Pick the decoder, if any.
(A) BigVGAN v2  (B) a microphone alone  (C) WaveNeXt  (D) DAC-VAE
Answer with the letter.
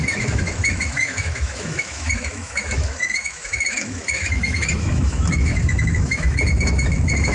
D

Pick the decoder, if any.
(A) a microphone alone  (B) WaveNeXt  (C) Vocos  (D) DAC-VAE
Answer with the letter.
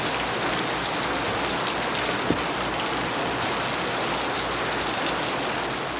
A